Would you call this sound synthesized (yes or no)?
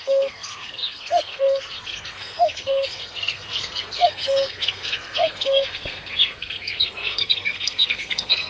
yes